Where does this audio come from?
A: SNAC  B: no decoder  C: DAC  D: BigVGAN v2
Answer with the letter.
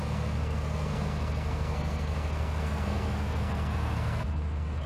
A